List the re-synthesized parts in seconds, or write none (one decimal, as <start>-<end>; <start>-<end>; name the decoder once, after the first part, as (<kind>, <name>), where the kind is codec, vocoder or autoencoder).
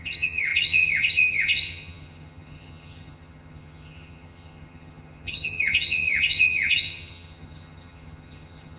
0.0-8.8 (vocoder, HiFi-GAN)